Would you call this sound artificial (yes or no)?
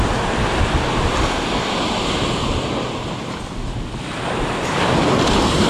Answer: no